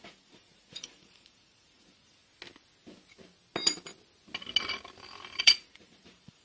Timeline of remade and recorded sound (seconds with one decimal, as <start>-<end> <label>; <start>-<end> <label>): 0.0-2.2 remade; 2.2-5.4 recorded; 5.4-6.4 remade